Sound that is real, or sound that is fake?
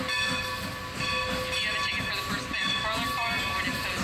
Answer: real